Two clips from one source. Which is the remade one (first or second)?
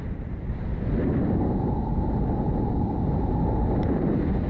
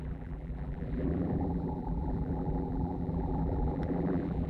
second